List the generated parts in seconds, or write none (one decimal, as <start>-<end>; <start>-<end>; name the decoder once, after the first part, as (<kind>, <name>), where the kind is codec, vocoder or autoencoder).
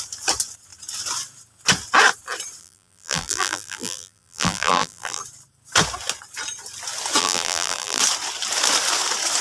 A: 2.6-5.2 (vocoder, BigVGAN v2); 7.2-8.0